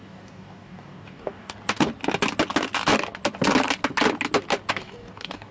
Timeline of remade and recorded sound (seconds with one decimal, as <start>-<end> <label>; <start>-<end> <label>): 0.0-1.9 remade; 1.9-4.7 recorded; 4.7-5.5 remade